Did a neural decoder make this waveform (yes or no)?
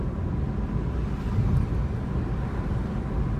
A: no